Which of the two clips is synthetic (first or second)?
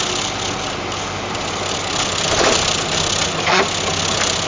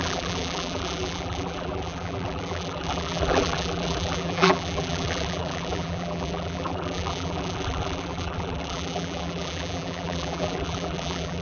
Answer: second